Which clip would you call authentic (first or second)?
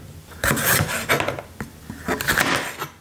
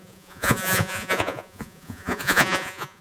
first